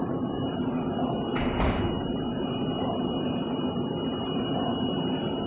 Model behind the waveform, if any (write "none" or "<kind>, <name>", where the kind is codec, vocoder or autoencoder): vocoder, BigVGAN v2